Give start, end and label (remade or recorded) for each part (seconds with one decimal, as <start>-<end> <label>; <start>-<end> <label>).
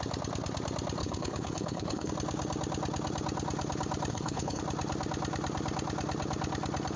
0.0-1.0 recorded; 1.0-2.1 remade; 2.1-4.1 recorded; 4.1-4.6 remade; 4.6-7.0 recorded